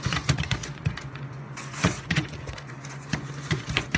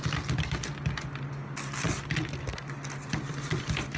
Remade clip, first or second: first